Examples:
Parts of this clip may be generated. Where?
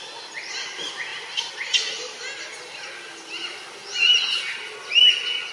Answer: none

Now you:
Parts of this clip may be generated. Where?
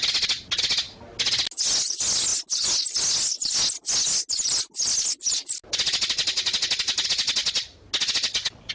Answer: none